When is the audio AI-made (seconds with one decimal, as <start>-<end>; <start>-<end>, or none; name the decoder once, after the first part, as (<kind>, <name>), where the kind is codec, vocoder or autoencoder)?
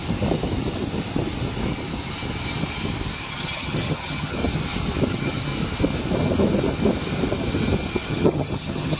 3.3-4.4 (vocoder, HiFi-GAN); 5.1-5.5; 8.1-9.0